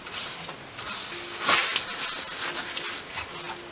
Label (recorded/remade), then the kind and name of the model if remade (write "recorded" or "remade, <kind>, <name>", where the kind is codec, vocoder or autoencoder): recorded